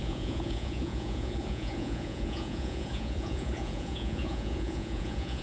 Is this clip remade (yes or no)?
yes